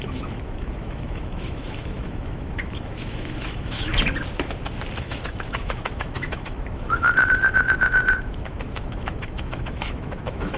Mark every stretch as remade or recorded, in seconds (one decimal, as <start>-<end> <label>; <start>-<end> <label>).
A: 0.0-3.9 remade; 3.9-5.0 recorded; 5.0-10.6 remade